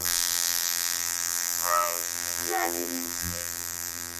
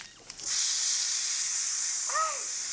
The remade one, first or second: first